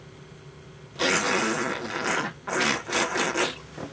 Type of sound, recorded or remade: recorded